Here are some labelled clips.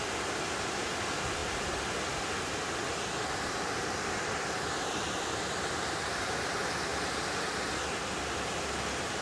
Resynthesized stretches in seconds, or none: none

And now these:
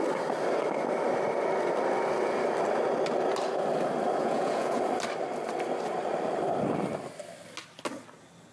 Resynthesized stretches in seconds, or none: 4.2-4.8 (vocoder, Vocos)

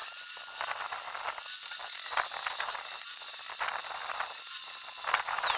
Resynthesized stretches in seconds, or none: none

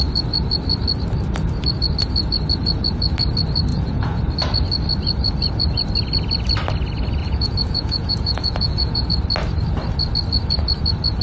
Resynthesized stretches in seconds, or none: 3.7-4.2 (vocoder, Vocos); 7.2-9.1

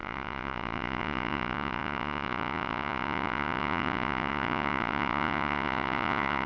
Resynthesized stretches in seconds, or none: 0.0-6.5 (vocoder, Vocos)

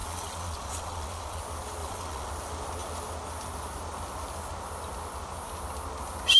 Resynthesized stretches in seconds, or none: 0.0-1.4 (vocoder, Vocos); 1.8-2.3